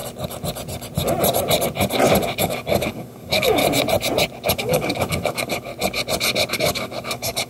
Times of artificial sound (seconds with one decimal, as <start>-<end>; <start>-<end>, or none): 2.4-3.6; 4.6-5.7; 6.5-7.5